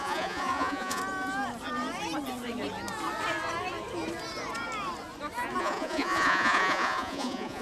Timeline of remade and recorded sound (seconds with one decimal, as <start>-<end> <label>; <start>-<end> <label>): 0.0-1.0 remade; 1.0-5.6 recorded; 5.6-7.6 remade

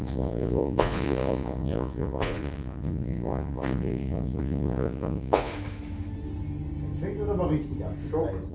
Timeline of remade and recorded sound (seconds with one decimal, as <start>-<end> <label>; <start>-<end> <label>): 0.0-5.5 remade; 5.5-8.5 recorded